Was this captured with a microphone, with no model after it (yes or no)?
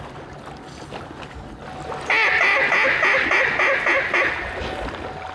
yes